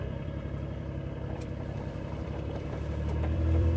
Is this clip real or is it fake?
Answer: fake